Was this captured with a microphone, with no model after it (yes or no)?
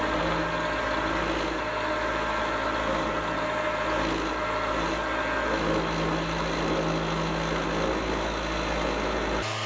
yes